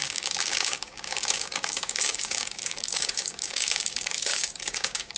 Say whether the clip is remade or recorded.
remade